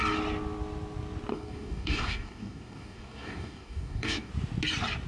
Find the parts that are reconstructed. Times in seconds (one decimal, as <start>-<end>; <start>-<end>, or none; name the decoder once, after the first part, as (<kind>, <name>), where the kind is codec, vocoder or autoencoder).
1.3-4.3 (codec, DAC)